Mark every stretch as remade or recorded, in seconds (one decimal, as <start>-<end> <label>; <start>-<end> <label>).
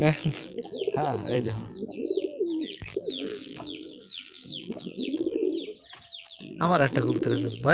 0.0-5.5 remade; 5.5-6.2 recorded; 6.2-7.7 remade